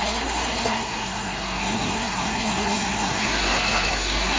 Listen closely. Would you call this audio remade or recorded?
remade